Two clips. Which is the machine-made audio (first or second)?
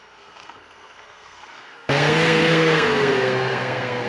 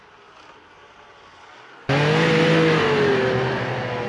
first